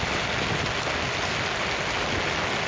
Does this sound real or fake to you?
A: real